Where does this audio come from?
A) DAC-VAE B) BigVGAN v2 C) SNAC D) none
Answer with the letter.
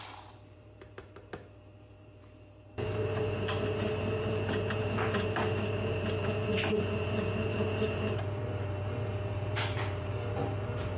B